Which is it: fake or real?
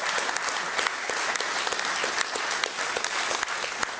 real